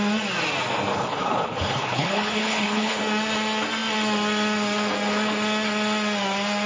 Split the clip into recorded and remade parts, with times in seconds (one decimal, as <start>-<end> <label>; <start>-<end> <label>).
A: 0.0-0.9 recorded; 0.9-3.0 remade; 3.0-6.7 recorded